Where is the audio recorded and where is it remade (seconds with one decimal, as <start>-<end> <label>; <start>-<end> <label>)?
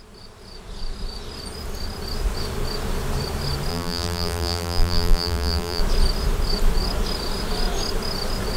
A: 0.0-3.7 recorded; 3.7-5.8 remade; 5.8-8.6 recorded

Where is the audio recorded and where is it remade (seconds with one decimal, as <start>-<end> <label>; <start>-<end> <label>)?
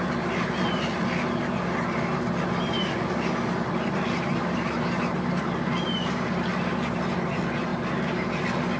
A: 0.0-8.8 recorded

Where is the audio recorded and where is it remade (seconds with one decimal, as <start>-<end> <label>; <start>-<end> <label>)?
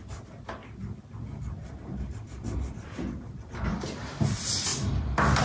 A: 0.0-4.7 remade; 4.7-5.4 recorded